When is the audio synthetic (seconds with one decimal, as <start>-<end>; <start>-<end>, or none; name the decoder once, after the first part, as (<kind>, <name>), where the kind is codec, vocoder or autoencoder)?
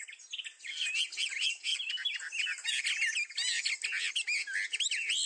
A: none